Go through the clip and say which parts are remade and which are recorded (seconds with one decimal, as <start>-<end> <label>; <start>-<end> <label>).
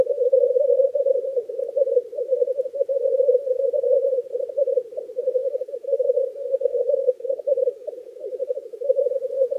0.0-5.4 recorded; 5.4-9.1 remade; 9.1-9.6 recorded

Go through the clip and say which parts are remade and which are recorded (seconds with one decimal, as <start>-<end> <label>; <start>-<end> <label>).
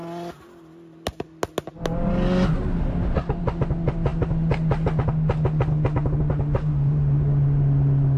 0.0-8.2 recorded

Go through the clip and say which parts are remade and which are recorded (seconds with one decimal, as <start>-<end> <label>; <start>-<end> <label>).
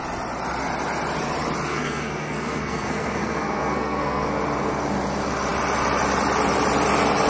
0.0-1.7 recorded; 1.7-4.4 remade; 4.4-7.3 recorded